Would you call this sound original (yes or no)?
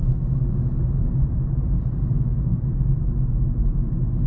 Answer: yes